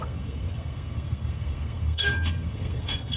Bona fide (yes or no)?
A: no